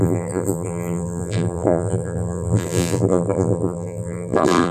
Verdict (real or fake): fake